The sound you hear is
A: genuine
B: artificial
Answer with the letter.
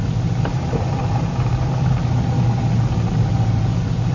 A